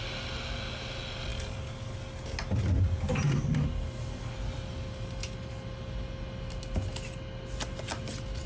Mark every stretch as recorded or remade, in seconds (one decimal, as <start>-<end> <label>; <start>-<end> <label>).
0.0-8.5 recorded